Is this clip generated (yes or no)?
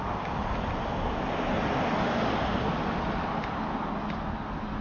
no